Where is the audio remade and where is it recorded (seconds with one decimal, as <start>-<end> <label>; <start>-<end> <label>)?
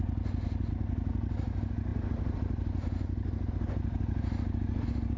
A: 0.0-5.2 recorded